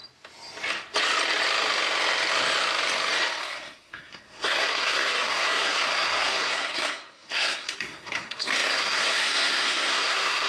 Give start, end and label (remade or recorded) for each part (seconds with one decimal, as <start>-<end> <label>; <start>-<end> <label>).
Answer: 0.0-3.4 recorded; 3.4-10.5 remade